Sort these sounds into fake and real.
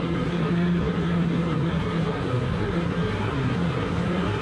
fake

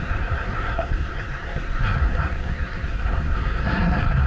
fake